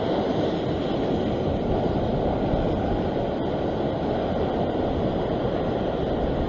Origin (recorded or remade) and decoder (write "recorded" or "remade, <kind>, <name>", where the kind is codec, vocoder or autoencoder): recorded